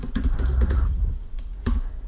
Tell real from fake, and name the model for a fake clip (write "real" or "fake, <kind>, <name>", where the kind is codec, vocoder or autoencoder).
fake, vocoder, Vocos